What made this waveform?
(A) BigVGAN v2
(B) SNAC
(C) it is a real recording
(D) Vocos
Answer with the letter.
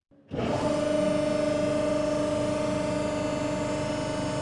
C